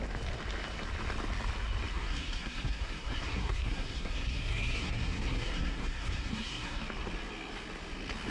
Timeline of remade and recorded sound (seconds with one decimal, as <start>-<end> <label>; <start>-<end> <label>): 0.0-1.9 recorded; 1.9-6.8 remade; 6.8-8.3 recorded